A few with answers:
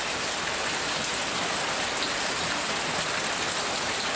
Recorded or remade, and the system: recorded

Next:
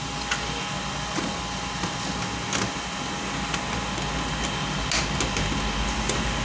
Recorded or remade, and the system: recorded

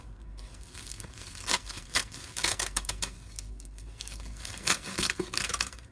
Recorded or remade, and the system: remade, codec, SNAC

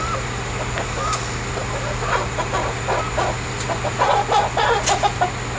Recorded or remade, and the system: recorded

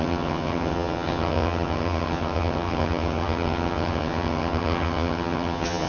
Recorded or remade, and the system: remade, vocoder, HiFi-GAN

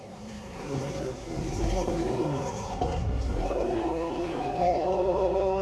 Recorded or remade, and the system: remade, codec, SNAC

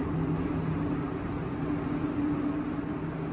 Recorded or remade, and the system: recorded